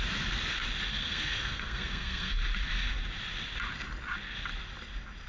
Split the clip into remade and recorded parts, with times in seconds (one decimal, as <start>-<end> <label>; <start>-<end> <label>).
0.0-0.9 recorded; 0.9-2.4 remade; 2.4-5.3 recorded